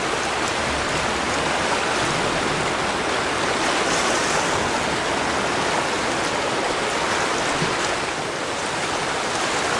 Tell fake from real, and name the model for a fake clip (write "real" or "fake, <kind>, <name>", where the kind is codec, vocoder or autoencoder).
real